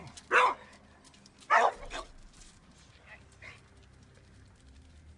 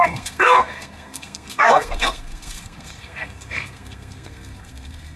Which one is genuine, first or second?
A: first